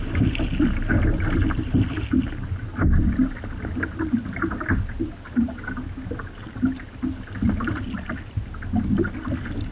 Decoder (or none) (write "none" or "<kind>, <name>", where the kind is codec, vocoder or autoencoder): none